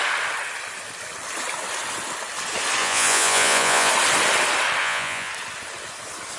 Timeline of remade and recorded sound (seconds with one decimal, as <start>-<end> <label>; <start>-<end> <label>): 0.0-2.8 recorded; 2.8-3.9 remade; 3.9-4.8 recorded; 4.8-5.3 remade; 5.3-6.4 recorded